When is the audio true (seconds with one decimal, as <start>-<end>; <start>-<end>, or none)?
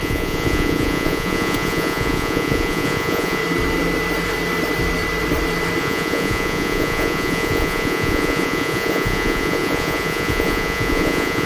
3.4-5.8